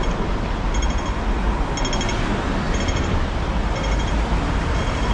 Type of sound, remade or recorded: recorded